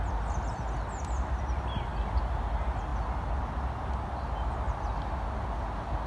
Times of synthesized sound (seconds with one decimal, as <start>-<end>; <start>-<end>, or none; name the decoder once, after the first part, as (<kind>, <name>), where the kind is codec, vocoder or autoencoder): none